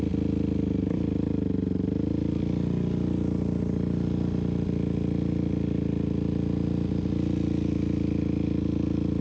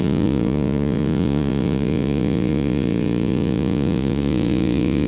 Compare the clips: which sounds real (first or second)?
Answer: first